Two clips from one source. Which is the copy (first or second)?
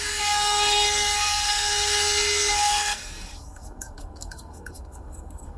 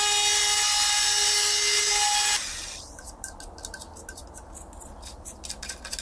first